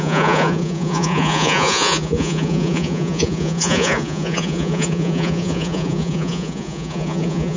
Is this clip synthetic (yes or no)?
yes